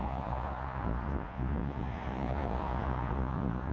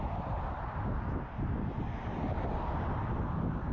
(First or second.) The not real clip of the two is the first